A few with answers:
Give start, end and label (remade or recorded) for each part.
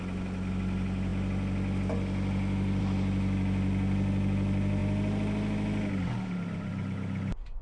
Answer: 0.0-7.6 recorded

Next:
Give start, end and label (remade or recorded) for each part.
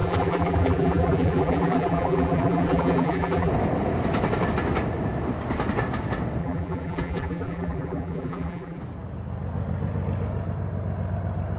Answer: 0.0-3.5 remade; 3.5-6.4 recorded; 6.4-8.8 remade; 8.8-11.6 recorded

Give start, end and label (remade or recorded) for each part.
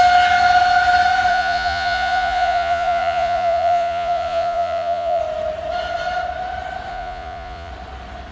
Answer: 0.0-1.3 recorded; 1.3-5.2 remade; 5.2-6.9 recorded; 6.9-7.7 remade; 7.7-8.3 recorded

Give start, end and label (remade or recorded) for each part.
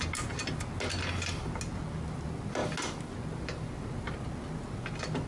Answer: 0.0-5.3 recorded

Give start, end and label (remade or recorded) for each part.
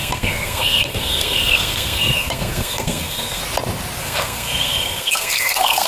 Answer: 0.0-3.4 remade; 3.4-4.0 recorded; 4.0-5.9 remade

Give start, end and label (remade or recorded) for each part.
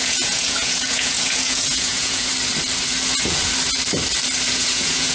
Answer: 0.0-2.3 remade; 2.3-4.5 recorded; 4.5-5.1 remade